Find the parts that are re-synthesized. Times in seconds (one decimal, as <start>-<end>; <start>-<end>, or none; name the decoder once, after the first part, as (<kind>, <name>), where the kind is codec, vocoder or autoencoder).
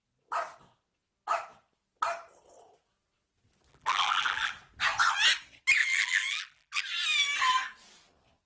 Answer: 3.7-4.5 (vocoder, BigVGAN v2); 5.8-6.8